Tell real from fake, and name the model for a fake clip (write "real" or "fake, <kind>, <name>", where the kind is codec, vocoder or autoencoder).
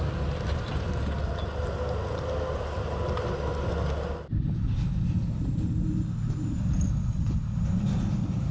real